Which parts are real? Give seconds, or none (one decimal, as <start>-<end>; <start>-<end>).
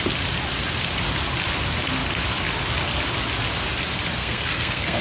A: 0.0-4.2